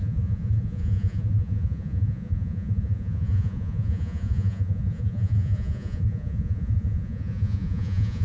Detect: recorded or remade remade